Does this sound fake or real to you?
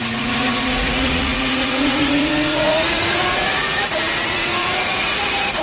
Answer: fake